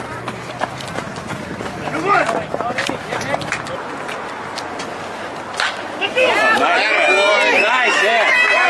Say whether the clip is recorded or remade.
recorded